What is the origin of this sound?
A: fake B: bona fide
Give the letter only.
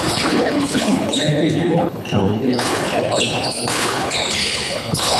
A